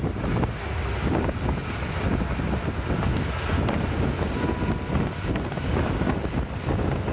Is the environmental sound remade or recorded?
recorded